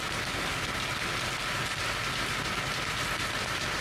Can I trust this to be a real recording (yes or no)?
yes